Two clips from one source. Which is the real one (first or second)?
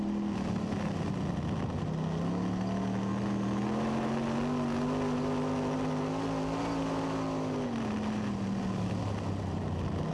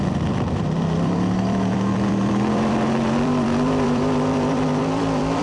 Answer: first